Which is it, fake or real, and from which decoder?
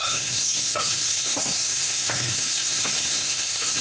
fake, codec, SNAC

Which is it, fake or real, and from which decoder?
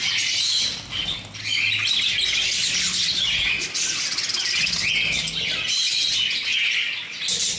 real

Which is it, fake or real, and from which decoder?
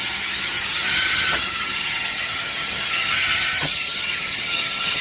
fake, vocoder, HiFi-GAN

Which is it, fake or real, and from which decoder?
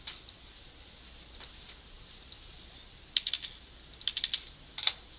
real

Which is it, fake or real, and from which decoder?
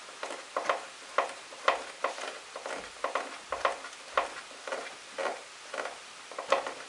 real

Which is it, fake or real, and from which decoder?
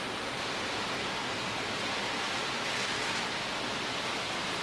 real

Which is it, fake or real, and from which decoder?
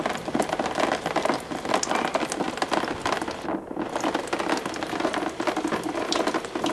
real